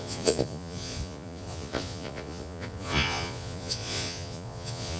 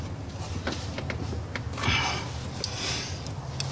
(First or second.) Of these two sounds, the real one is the second